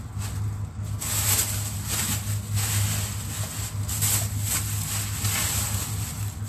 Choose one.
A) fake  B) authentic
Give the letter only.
B